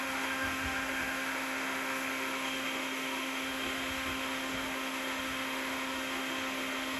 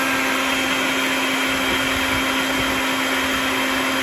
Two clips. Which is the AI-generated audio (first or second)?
first